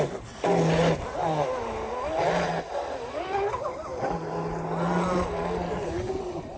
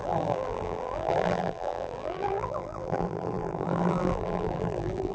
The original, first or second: first